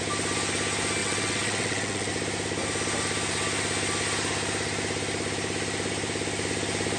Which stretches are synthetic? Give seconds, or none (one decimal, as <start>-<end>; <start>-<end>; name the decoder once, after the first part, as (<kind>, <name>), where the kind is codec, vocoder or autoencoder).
1.0-2.1 (vocoder, WaveNeXt)